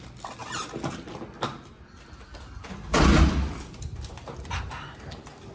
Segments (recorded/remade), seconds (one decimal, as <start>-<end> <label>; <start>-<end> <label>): 0.0-5.5 recorded